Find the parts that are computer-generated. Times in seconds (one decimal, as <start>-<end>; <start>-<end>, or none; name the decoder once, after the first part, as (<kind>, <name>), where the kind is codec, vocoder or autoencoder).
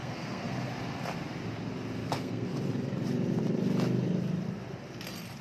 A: 0.0-0.7 (codec, SNAC); 2.0-2.6